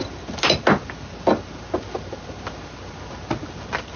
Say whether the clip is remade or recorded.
recorded